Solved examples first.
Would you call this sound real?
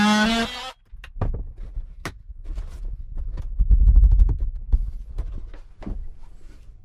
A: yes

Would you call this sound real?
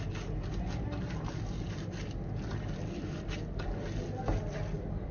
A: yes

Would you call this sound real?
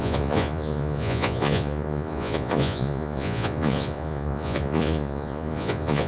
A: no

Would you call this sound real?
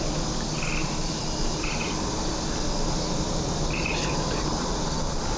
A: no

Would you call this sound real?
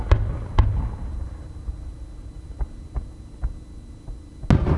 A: yes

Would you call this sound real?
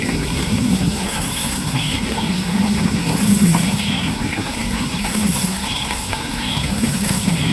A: no